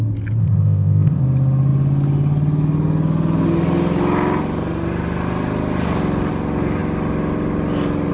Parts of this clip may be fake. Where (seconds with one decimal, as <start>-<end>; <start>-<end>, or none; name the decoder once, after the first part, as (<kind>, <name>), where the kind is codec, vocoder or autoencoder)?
0.4-1.2 (codec, ZipCodec)